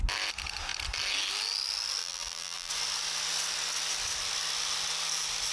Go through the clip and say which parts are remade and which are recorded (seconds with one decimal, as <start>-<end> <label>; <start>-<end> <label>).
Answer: 0.0-2.0 recorded; 2.0-2.7 remade; 2.7-5.5 recorded